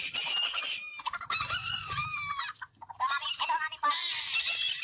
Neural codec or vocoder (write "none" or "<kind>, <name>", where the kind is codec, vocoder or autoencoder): vocoder, BigVGAN v2